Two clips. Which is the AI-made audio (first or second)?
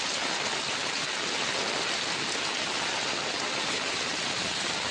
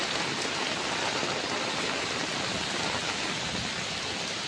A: second